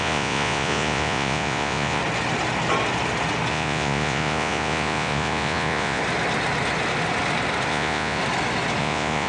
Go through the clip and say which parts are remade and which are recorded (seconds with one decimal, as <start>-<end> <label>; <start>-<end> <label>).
0.0-2.0 remade; 2.0-3.5 recorded; 3.5-6.0 remade; 6.0-7.7 recorded; 7.7-8.2 remade; 8.2-8.8 recorded; 8.8-9.3 remade